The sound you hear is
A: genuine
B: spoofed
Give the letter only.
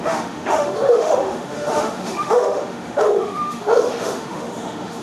B